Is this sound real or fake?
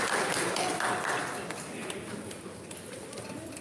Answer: real